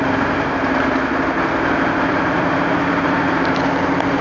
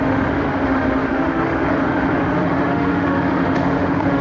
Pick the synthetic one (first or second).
second